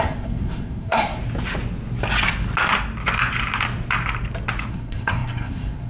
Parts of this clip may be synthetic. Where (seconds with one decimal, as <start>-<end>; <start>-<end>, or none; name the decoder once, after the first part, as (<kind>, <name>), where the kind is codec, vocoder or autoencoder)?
0.0-1.2 (codec, SNAC); 4.7-5.9